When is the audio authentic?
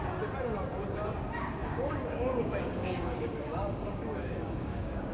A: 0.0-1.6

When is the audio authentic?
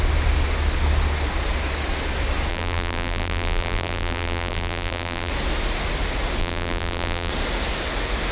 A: 0.0-2.5; 5.3-6.4; 7.3-8.3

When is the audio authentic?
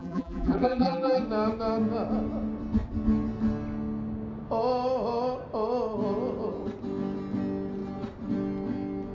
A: 1.2-9.1